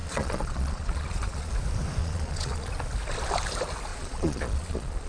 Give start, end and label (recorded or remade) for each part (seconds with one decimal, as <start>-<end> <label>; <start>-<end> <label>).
0.0-1.5 remade; 1.5-2.0 recorded; 2.0-2.7 remade; 2.7-3.9 recorded; 3.9-5.1 remade